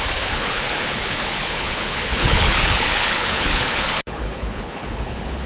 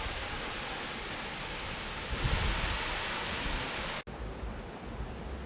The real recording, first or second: second